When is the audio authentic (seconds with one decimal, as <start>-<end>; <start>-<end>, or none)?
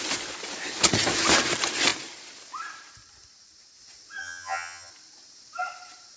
0.0-4.2; 4.9-6.2